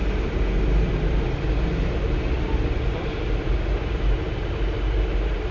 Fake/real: real